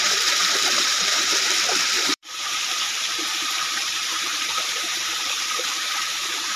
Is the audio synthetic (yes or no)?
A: yes